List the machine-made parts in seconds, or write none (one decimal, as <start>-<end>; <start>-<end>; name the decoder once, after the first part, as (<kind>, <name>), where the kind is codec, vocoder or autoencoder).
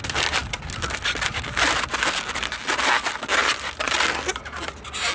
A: none